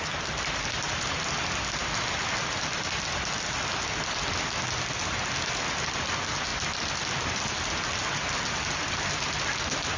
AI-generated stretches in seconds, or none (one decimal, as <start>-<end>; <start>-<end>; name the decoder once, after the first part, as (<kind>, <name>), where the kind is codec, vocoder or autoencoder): none